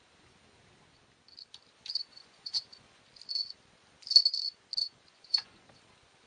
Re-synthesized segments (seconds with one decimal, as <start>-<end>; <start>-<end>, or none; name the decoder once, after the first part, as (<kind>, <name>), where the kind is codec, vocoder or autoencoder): 2.1-3.0 (vocoder, Vocos); 4.8-5.7

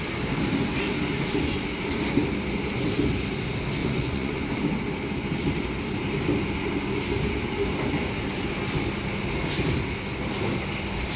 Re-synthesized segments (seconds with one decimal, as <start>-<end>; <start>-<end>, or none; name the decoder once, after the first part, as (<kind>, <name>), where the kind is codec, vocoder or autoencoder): 3.8-4.4 (vocoder, Vocos)

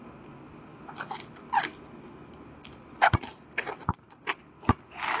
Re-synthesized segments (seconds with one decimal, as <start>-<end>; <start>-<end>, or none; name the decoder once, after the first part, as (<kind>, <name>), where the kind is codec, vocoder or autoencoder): none